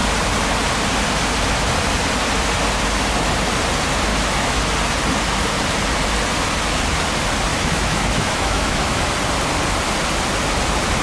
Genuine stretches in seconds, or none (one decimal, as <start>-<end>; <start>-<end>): 0.0-4.1; 4.6-7.5; 9.0-11.0